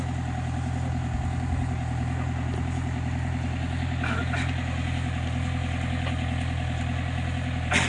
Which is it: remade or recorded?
recorded